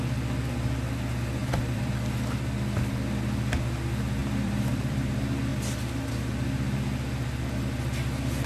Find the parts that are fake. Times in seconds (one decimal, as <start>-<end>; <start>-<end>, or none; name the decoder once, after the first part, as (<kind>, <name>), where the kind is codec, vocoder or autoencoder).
1.4-1.9 (vocoder, BigVGAN v2); 4.2-5.1